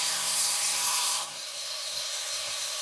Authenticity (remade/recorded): remade